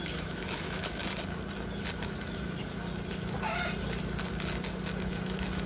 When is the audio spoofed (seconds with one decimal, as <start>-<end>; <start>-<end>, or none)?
0.0-1.0; 2.0-2.6; 5.1-5.7